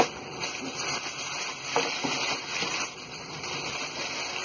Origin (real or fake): real